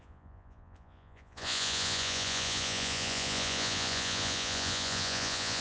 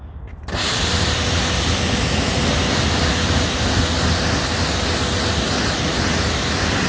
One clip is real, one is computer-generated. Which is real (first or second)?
second